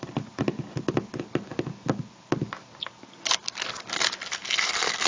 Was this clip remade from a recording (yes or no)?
no